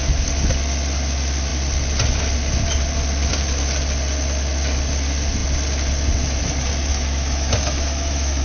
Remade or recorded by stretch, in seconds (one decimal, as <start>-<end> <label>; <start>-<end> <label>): 0.0-6.9 recorded; 6.9-8.4 remade